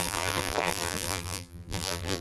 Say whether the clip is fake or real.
fake